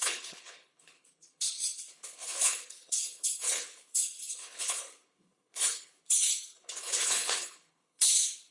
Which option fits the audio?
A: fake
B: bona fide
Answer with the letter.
A